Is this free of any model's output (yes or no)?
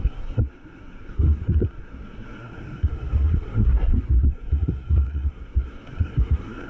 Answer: no